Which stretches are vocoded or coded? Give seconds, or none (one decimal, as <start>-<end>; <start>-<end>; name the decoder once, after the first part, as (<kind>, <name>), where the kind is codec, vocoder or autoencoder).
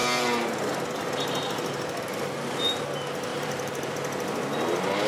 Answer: 3.3-3.9 (vocoder, BigVGAN v2)